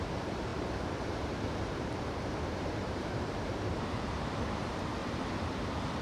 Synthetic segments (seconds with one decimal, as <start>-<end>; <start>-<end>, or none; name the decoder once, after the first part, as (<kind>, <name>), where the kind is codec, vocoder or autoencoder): 0.0-5.0 (vocoder, BigVGAN v2)